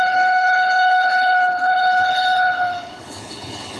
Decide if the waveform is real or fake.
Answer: fake